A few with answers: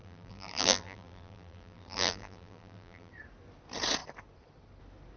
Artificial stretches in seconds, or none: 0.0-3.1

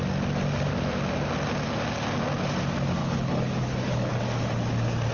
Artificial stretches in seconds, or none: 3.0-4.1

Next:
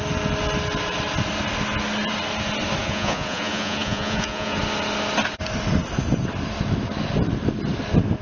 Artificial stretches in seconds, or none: 2.8-4.6

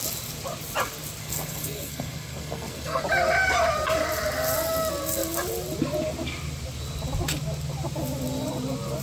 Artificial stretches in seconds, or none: 1.2-3.0

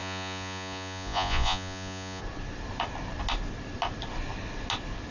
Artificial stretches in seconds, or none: 0.0-2.2